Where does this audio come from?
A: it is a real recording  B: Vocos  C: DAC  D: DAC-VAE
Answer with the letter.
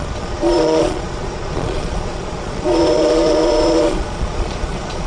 B